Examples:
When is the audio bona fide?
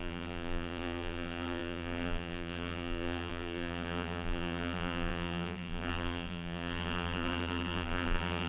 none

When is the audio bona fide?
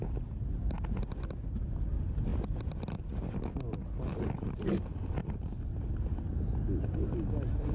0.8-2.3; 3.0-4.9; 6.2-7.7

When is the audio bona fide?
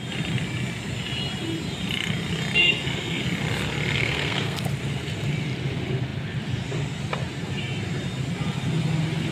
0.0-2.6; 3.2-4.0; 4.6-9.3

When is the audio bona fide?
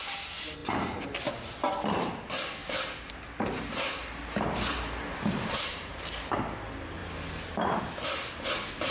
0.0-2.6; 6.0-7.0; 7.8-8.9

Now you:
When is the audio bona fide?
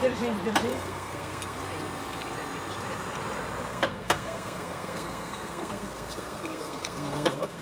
0.0-0.7; 1.6-3.7